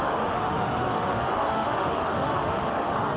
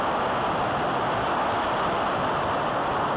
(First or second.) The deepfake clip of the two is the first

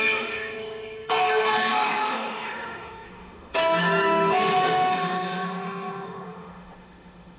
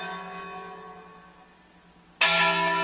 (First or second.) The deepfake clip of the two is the first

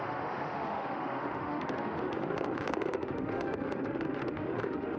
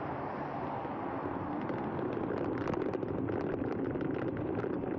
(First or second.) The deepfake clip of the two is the first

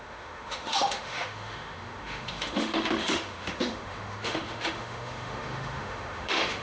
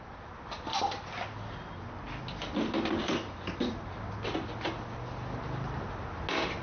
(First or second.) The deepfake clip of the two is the first